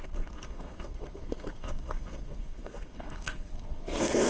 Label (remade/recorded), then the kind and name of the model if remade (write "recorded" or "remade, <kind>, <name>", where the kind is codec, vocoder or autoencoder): remade, codec, SNAC